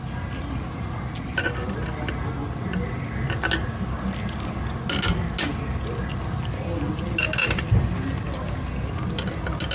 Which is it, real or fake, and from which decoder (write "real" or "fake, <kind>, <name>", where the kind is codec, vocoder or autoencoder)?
real